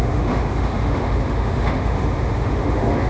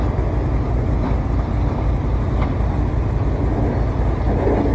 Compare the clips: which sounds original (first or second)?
second